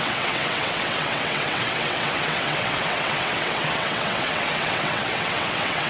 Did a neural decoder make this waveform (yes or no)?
yes